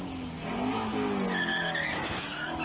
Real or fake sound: real